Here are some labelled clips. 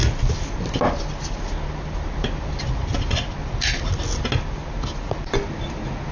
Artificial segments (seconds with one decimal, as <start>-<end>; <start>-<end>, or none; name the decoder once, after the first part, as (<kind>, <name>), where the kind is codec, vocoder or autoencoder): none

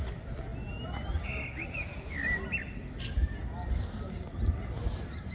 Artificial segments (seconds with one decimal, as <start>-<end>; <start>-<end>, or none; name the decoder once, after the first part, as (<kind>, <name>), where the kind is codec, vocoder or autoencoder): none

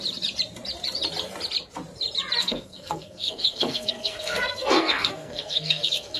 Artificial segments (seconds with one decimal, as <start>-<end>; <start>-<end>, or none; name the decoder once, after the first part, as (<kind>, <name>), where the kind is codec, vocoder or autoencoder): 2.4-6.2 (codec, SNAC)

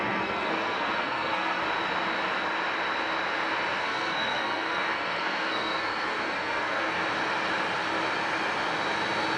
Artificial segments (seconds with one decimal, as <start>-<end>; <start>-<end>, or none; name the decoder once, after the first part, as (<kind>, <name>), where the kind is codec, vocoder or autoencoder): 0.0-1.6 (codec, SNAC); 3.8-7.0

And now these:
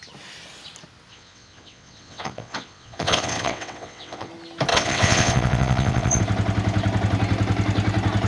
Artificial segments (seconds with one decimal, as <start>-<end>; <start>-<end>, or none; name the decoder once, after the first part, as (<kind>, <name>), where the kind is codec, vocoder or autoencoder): 1.1-4.3 (vocoder, WaveNeXt); 4.7-6.2

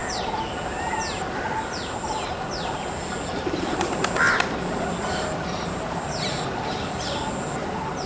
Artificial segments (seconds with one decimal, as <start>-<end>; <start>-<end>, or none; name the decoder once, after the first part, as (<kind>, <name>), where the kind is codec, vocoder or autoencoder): none